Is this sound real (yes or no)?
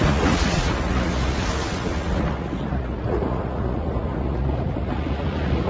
no